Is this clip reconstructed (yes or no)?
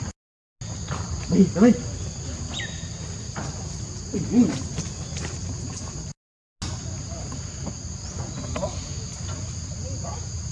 no